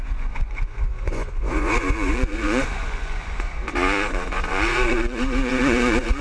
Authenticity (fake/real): fake